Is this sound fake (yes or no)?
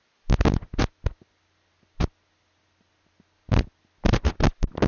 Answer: no